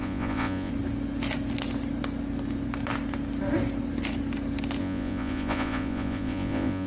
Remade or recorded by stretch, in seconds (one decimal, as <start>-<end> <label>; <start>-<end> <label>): 0.0-0.7 remade; 0.7-4.8 recorded; 4.8-6.9 remade